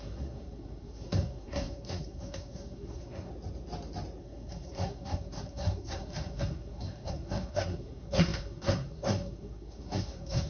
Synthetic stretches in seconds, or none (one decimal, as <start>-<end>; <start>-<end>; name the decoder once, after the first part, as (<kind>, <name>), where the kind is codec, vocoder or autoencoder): 0.0-3.3 (codec, SNAC); 4.2-10.5